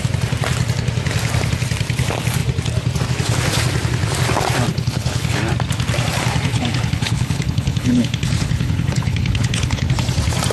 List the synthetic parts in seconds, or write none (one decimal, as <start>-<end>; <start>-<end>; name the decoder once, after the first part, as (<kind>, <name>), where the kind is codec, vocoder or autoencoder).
4.7-5.4 (codec, HILCodec); 6.5-9.9